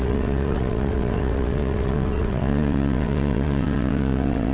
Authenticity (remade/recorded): remade